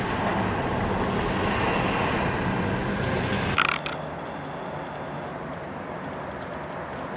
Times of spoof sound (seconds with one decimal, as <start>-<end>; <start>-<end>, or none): 5.3-6.0